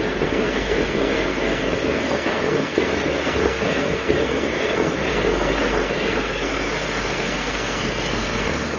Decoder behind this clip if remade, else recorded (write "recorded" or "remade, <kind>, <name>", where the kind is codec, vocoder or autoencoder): remade, codec, SNAC